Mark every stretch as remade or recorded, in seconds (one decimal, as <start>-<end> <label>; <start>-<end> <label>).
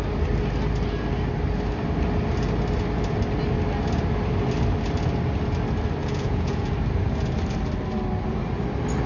0.0-6.0 recorded; 6.0-6.7 remade; 6.7-9.1 recorded